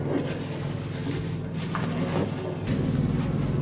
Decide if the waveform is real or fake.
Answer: real